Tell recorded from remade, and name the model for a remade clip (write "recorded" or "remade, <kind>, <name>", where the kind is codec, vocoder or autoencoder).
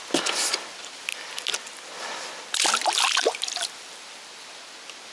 recorded